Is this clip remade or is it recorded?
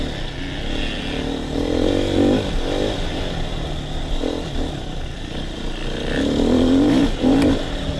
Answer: recorded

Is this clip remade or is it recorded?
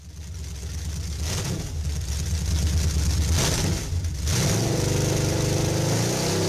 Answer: recorded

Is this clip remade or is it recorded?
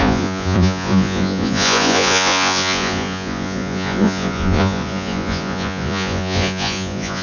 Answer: remade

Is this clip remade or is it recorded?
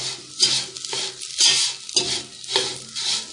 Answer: recorded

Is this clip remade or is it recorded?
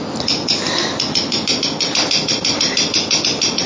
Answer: recorded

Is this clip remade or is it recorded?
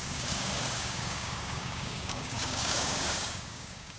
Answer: remade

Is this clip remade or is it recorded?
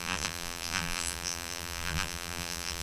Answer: remade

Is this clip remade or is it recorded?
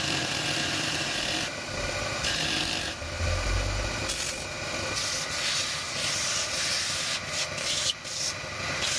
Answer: recorded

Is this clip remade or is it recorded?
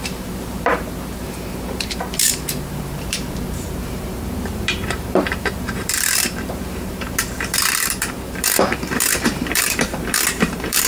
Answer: remade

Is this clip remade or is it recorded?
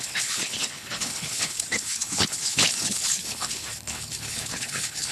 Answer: remade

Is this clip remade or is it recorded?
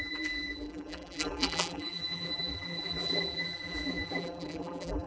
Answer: remade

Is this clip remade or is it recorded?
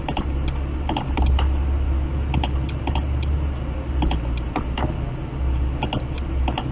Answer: recorded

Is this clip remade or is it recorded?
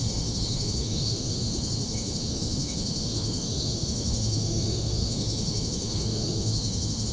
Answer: remade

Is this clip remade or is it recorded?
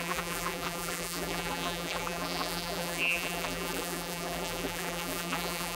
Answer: remade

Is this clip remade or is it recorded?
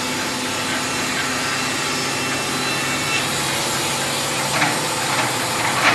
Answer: recorded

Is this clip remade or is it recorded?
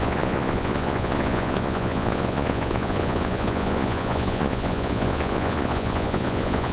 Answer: remade